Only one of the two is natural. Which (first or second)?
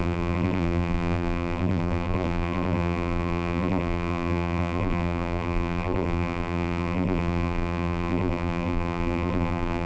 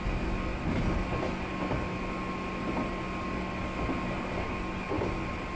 second